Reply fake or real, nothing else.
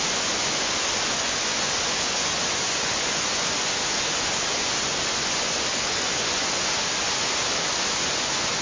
fake